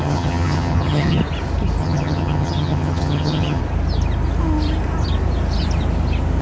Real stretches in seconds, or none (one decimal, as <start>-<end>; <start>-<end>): 1.2-1.8; 3.6-6.4